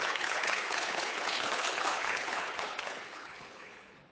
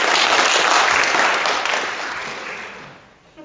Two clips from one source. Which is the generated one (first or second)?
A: first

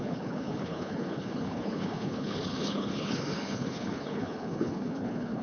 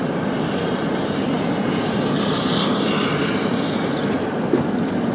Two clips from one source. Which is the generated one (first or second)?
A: first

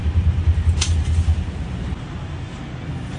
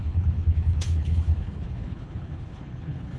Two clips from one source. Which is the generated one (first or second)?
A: second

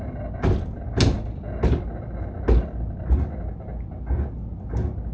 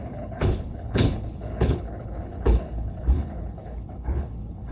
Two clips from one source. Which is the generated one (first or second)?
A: second